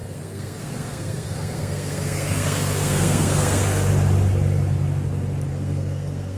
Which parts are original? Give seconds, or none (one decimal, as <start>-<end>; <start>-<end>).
3.9-5.5

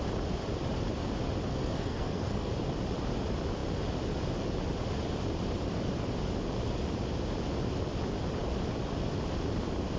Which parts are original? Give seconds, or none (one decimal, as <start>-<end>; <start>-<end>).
0.0-1.5; 2.5-10.0

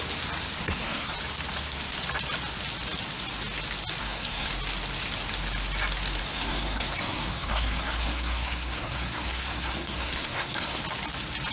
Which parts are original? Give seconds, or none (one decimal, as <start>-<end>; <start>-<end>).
0.0-0.6; 1.1-4.0; 4.5-6.2; 10.8-11.5

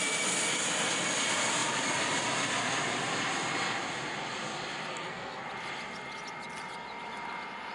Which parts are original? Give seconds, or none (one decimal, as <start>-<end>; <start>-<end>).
0.0-4.9; 5.4-7.7

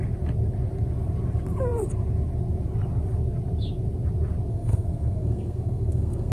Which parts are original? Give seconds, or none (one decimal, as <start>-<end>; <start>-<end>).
0.0-4.5

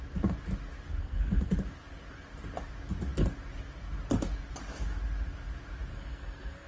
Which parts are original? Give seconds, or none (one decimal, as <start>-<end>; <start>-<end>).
0.0-1.0; 1.5-5.9

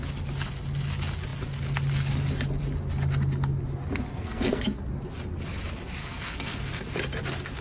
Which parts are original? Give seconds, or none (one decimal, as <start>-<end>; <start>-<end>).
0.0-4.1; 4.8-6.0; 6.9-7.6

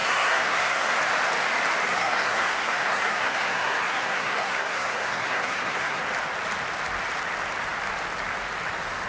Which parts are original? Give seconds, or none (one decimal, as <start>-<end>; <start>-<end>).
1.0-1.9; 6.0-9.1